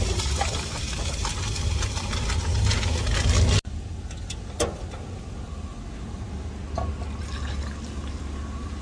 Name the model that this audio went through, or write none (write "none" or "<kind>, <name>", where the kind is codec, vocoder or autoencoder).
none